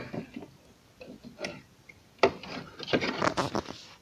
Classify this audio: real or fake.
real